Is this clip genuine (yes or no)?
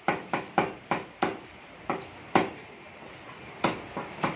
yes